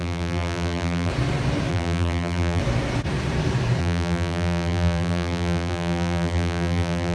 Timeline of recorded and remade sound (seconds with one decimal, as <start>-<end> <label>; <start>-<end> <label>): 0.0-1.1 remade; 1.1-1.7 recorded; 1.7-2.6 remade; 2.6-3.8 recorded; 3.8-7.1 remade